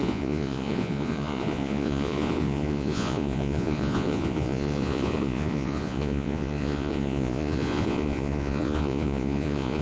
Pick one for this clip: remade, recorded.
remade